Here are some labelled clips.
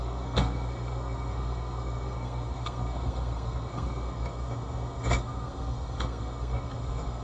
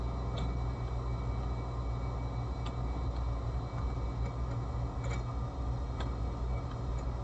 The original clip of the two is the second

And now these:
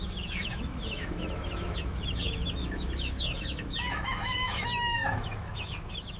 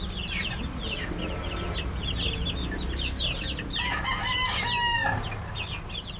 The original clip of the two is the second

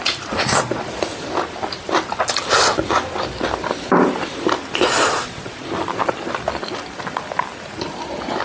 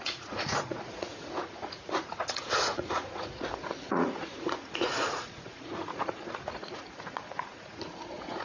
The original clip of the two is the first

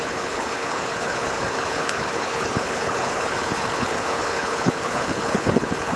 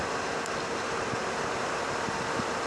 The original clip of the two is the second